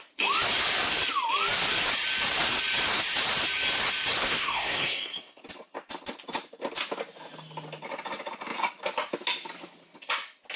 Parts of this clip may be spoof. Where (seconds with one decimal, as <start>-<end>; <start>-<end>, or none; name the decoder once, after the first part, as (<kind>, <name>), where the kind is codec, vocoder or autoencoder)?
4.2-5.4 (codec, SNAC)